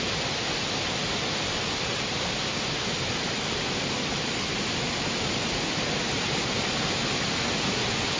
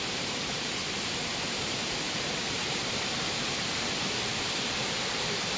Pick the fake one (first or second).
second